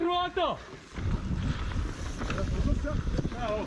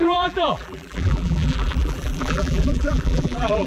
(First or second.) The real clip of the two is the first